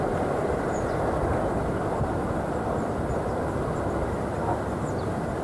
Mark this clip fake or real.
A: real